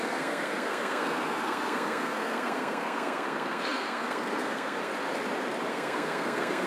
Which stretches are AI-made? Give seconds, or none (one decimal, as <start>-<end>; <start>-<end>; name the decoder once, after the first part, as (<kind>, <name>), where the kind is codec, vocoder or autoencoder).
0.0-4.9 (codec, SNAC); 5.7-6.7